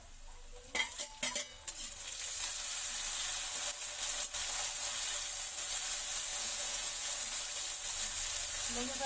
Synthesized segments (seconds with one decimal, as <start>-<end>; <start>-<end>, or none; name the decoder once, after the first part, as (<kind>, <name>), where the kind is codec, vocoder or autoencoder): 6.3-7.1 (vocoder, Vocos)